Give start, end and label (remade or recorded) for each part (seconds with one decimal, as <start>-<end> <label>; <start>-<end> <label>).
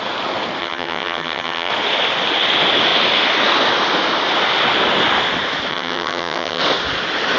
0.0-0.6 recorded; 0.6-1.7 remade; 1.7-5.7 recorded; 5.7-6.6 remade; 6.6-7.4 recorded